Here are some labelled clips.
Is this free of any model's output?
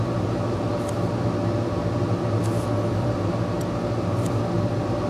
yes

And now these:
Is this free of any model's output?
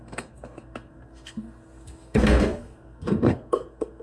no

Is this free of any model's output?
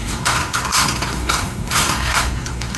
no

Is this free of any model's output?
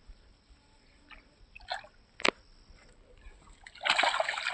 yes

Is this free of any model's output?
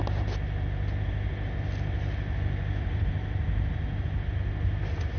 yes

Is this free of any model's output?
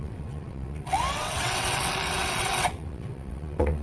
no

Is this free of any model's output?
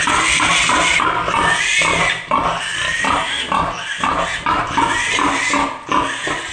yes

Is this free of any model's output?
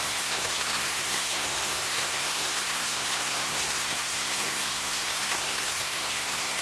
no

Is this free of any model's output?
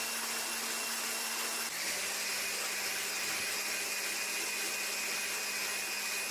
yes